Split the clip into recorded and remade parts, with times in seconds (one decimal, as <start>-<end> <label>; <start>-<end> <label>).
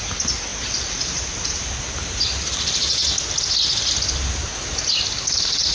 0.0-5.7 recorded